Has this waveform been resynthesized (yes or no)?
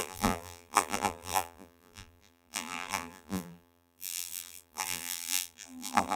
yes